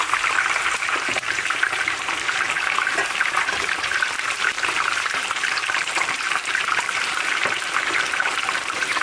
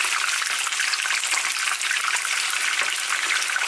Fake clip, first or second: first